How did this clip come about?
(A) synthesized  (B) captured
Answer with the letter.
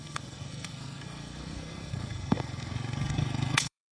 A